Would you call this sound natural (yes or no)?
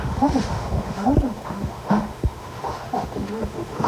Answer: no